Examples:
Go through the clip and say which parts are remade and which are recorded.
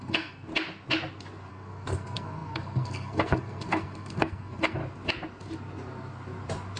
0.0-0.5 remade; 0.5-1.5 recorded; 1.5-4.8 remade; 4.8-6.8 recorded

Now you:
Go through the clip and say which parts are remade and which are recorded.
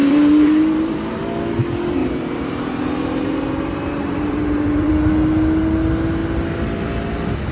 0.0-1.2 remade; 1.2-2.0 recorded; 2.0-4.9 remade; 4.9-7.5 recorded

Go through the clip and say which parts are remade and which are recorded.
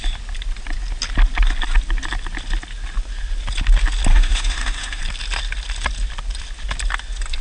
0.0-4.1 recorded; 4.1-5.0 remade; 5.0-7.4 recorded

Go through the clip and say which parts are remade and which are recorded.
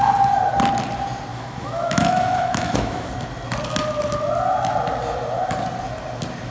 0.0-1.3 recorded; 1.3-3.1 remade; 3.1-6.5 recorded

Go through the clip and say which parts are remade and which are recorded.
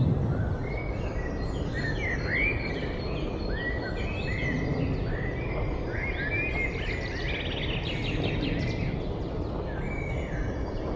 0.0-11.0 recorded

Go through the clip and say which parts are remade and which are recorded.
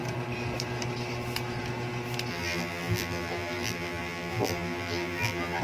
0.0-2.3 recorded; 2.3-5.6 remade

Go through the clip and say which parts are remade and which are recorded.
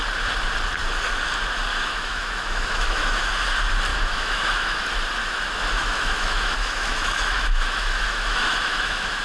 0.0-1.7 recorded; 1.7-3.3 remade; 3.3-3.9 recorded; 3.9-4.8 remade; 4.8-5.2 recorded; 5.2-9.2 remade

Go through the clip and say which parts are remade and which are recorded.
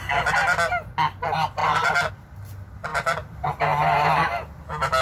0.0-2.9 recorded; 2.9-3.5 remade; 3.5-5.0 recorded